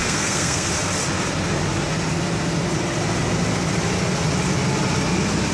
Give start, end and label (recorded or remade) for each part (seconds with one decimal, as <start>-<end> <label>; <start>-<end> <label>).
0.0-0.7 remade; 0.7-5.5 recorded